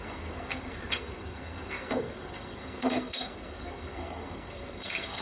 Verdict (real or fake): fake